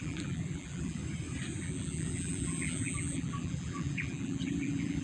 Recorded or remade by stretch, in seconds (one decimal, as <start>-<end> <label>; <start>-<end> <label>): 0.0-1.0 remade; 1.0-1.6 recorded; 1.6-5.0 remade

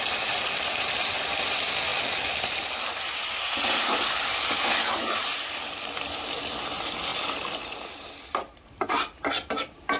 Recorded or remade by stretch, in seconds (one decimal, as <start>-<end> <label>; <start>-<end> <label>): 0.0-7.1 recorded; 7.1-8.7 remade; 8.7-10.0 recorded

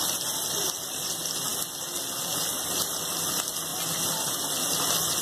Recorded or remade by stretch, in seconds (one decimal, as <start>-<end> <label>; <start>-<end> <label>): 0.0-5.2 recorded

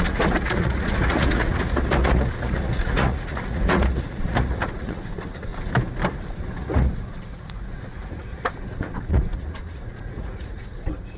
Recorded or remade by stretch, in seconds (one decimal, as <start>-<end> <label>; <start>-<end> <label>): 0.0-5.5 remade; 5.5-6.3 recorded; 6.3-11.2 remade